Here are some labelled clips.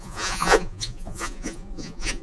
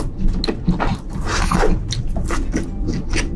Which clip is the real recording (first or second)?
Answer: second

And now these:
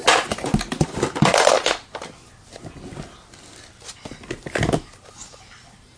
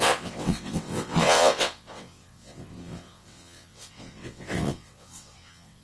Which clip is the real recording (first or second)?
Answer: first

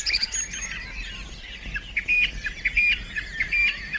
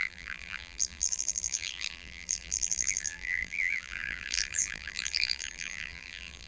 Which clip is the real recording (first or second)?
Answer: first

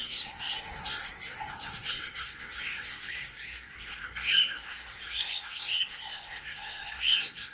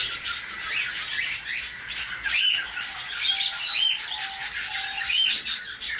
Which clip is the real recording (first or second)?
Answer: second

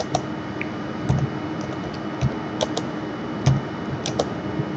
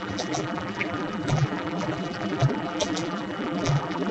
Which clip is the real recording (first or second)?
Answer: first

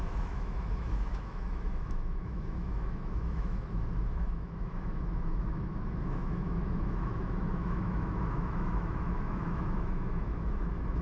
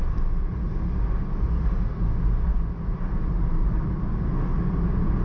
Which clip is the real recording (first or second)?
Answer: second